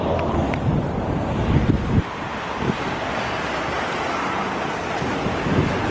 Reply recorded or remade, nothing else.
recorded